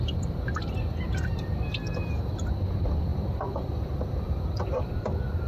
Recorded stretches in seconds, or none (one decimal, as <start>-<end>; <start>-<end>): 0.0-3.1; 4.9-5.5